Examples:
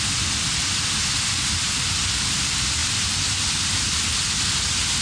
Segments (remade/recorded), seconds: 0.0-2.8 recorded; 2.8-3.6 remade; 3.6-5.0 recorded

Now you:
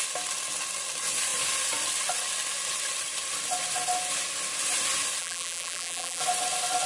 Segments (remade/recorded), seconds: 0.0-5.2 recorded; 5.2-6.2 remade; 6.2-6.9 recorded

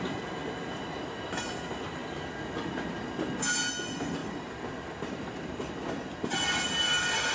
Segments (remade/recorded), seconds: 0.0-4.2 recorded; 4.2-5.5 remade; 5.5-7.3 recorded

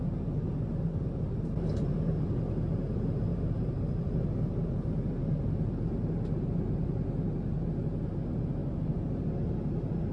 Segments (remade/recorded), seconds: 0.0-3.3 recorded; 3.3-4.1 remade; 4.1-8.6 recorded; 8.6-9.2 remade; 9.2-10.1 recorded

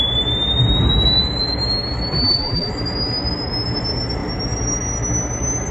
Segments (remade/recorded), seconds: 0.0-2.2 recorded; 2.2-2.7 remade; 2.7-5.7 recorded